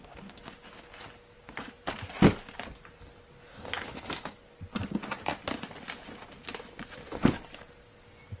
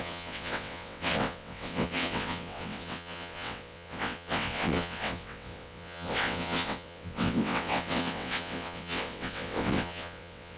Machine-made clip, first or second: second